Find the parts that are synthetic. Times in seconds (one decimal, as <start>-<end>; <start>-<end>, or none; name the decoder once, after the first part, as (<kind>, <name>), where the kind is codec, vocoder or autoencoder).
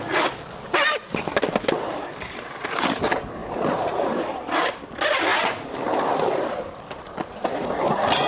none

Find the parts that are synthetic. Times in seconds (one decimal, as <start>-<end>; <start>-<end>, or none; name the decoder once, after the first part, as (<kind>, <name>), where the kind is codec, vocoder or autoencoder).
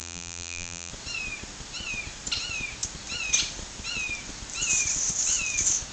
0.0-0.9 (vocoder, BigVGAN v2)